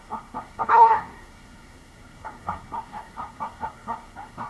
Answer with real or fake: fake